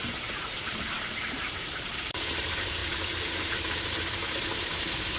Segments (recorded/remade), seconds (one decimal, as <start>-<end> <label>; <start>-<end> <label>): 0.0-2.8 remade; 2.8-3.5 recorded; 3.5-5.2 remade